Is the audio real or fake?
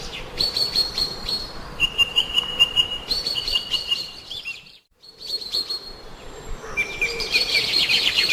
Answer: fake